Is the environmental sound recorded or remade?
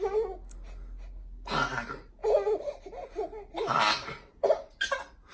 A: recorded